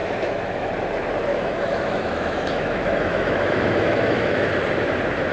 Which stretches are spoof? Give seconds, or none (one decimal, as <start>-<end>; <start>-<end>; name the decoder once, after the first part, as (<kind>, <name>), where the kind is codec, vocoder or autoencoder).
0.0-0.7 (autoencoder, DAC-VAE); 1.3-4.5